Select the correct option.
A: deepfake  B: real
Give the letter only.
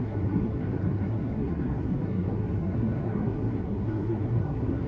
A